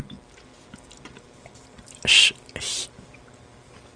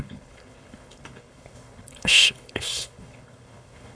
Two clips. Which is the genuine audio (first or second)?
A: first